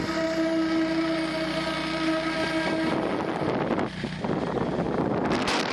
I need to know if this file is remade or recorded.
recorded